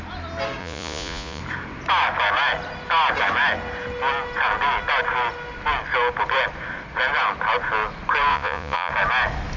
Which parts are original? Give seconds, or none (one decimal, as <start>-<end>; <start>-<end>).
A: 0.0-0.6; 1.4-8.3; 8.9-9.6